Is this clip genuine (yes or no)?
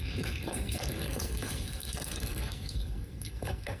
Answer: no